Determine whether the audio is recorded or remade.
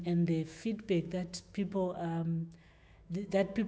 remade